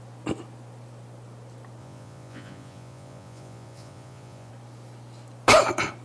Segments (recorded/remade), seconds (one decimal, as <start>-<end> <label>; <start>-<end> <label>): 0.0-1.8 recorded; 1.8-4.5 remade; 4.5-6.0 recorded